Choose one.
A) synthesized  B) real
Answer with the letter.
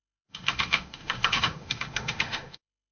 A